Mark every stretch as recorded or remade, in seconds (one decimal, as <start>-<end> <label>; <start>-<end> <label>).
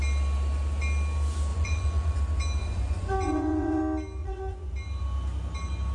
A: 0.0-1.5 recorded; 1.5-2.2 remade; 2.2-2.6 recorded; 2.6-3.8 remade; 3.8-4.2 recorded; 4.2-4.7 remade; 4.7-5.9 recorded